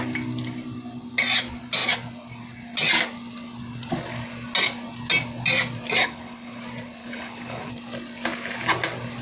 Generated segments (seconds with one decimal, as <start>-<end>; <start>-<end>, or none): 6.0-6.6; 7.0-7.7